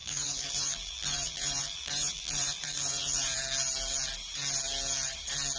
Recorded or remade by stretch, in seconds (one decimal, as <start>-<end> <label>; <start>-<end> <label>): 0.0-3.4 remade; 3.4-5.6 recorded